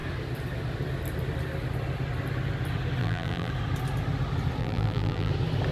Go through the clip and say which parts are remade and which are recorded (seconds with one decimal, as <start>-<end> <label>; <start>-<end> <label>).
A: 0.0-3.0 recorded; 3.0-3.5 remade; 3.5-4.6 recorded; 4.6-5.3 remade; 5.3-5.7 recorded